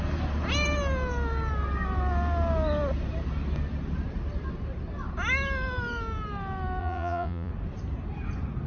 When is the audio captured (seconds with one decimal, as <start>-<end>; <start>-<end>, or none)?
0.0-6.8; 7.5-8.7